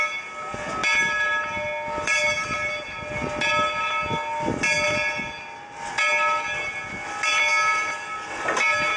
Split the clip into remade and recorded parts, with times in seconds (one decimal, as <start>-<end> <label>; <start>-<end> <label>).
0.0-9.0 recorded